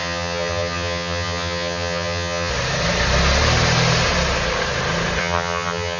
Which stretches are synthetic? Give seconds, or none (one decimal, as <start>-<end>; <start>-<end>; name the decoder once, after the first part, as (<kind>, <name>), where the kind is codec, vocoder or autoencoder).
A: 0.0-2.5 (vocoder, HiFi-GAN); 5.2-6.0